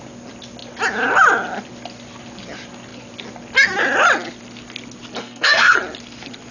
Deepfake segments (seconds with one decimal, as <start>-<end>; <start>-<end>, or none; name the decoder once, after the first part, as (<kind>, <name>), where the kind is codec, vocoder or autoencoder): 5.2-5.8 (codec, SNAC)